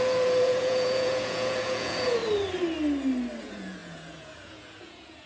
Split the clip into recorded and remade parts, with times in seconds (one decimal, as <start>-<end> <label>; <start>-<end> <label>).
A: 0.0-2.2 remade; 2.2-3.4 recorded; 3.4-5.3 remade

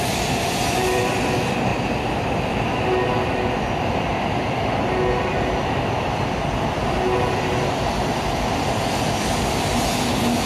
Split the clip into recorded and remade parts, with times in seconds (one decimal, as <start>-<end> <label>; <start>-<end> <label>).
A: 0.0-1.7 recorded; 1.7-2.7 remade; 2.7-10.5 recorded

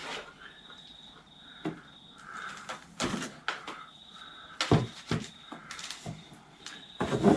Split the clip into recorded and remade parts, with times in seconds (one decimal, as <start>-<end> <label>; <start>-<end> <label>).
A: 0.0-7.4 recorded

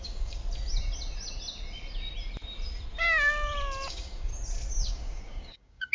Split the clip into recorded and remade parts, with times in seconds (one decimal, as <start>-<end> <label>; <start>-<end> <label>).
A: 0.0-0.4 remade; 0.4-3.9 recorded; 3.9-4.3 remade; 4.3-4.9 recorded; 4.9-5.9 remade

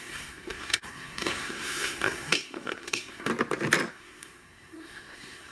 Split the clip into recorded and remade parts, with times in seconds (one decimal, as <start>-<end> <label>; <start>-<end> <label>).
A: 0.0-3.3 remade; 3.3-3.9 recorded; 3.9-5.5 remade

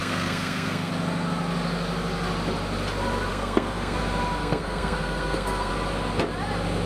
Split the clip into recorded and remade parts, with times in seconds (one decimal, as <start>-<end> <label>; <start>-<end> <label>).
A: 0.0-0.9 remade; 0.9-3.3 recorded; 3.3-4.0 remade; 4.0-4.4 recorded; 4.4-5.7 remade; 5.7-6.9 recorded